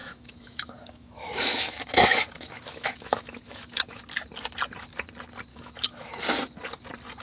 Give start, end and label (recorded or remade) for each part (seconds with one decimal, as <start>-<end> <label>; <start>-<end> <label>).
0.0-4.0 remade; 4.0-5.5 recorded; 5.5-6.2 remade; 6.2-7.2 recorded